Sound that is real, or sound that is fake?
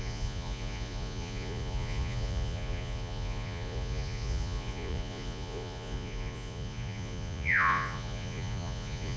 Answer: fake